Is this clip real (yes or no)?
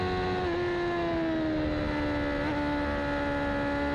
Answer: yes